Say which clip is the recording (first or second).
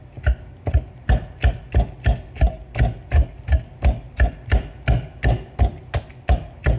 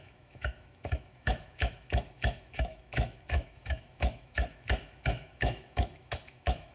first